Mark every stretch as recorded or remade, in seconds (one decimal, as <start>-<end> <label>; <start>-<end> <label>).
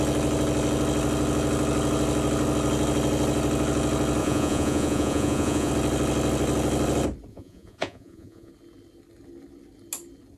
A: 0.0-4.2 recorded; 4.2-5.7 remade; 5.7-7.3 recorded; 7.3-8.5 remade; 8.5-10.4 recorded